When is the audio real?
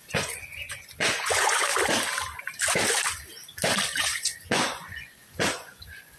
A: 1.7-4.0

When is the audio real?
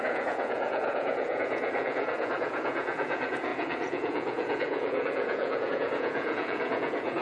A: none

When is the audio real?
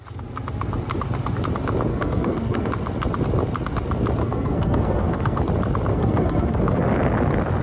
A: 0.0-1.9; 2.7-4.2; 5.4-5.9; 6.8-7.6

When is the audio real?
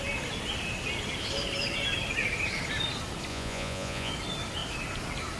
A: 0.0-3.3; 4.1-5.4